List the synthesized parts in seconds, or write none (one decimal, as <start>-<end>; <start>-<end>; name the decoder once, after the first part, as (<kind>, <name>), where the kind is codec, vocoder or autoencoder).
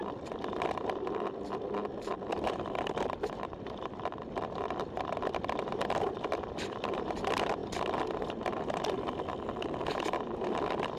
0.0-7.6 (vocoder, BigVGAN v2)